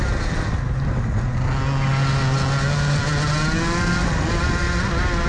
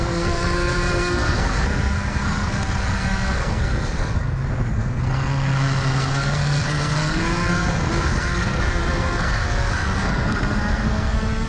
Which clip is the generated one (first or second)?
second